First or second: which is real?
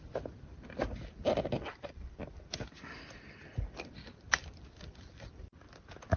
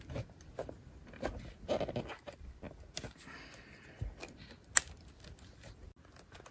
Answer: second